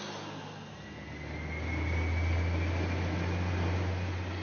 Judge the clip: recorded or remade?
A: recorded